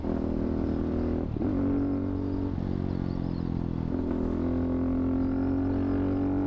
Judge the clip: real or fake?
real